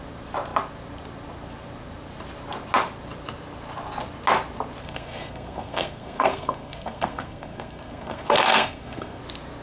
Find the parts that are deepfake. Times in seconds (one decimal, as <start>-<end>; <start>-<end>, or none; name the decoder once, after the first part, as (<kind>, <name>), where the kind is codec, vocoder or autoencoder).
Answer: 4.8-9.2 (codec, SNAC)